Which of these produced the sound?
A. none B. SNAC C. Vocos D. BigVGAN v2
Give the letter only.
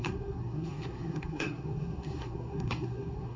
B